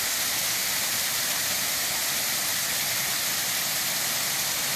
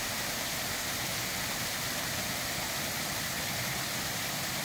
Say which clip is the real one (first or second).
first